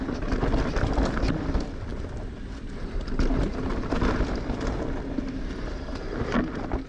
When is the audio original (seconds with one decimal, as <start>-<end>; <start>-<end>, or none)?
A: 0.0-6.9